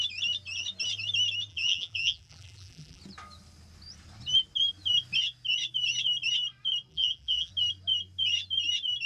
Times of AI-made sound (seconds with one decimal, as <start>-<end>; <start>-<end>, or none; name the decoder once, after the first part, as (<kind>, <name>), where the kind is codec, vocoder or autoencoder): 1.5-3.0 (vocoder, BigVGAN v2); 6.9-7.5